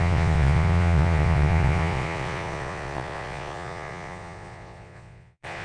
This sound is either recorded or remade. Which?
remade